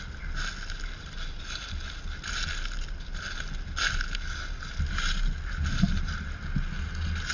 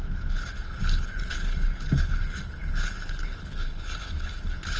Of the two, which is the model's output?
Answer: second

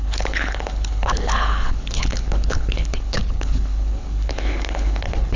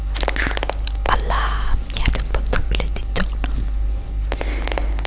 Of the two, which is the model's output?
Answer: first